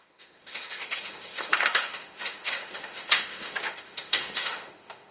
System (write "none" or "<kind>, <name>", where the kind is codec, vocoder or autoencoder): autoencoder, DAC-VAE